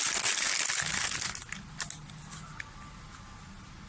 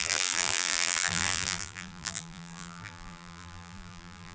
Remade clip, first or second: second